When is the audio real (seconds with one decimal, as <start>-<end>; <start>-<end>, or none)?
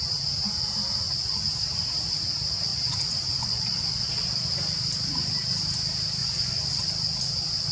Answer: 0.0-2.7; 4.1-6.2; 6.8-7.7